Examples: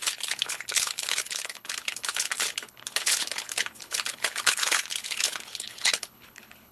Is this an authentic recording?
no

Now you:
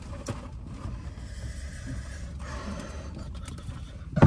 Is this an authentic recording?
yes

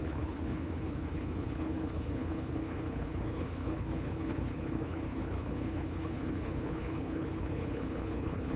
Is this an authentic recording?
no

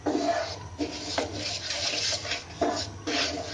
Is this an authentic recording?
yes